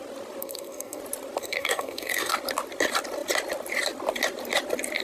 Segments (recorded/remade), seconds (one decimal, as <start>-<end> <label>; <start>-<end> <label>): 0.0-0.4 recorded; 0.4-1.0 remade; 1.0-1.4 recorded; 1.4-2.3 remade; 2.3-5.0 recorded